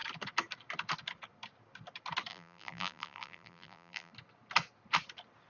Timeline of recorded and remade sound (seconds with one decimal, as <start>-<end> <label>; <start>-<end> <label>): 0.0-2.3 recorded; 2.3-4.1 remade; 4.1-5.5 recorded